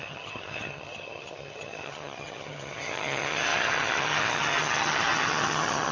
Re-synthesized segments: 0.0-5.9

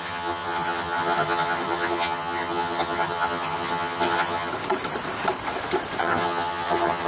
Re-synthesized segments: 0.0-4.5; 6.0-7.1